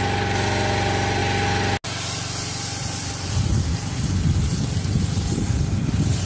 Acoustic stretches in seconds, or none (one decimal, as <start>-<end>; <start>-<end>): 0.0-6.3